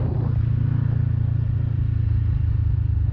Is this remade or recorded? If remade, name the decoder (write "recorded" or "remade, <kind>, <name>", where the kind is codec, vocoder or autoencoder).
recorded